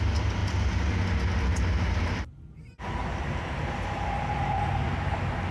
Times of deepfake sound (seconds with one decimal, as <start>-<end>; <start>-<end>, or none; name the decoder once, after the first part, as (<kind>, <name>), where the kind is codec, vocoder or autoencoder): none